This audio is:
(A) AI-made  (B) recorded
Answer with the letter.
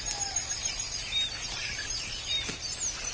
B